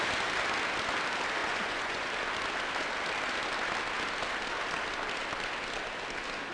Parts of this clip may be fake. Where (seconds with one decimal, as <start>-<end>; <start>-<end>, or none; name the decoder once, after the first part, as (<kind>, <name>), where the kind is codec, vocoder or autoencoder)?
1.4-2.1 (vocoder, Vocos)